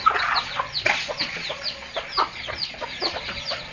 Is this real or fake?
fake